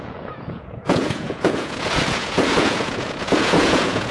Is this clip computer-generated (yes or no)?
yes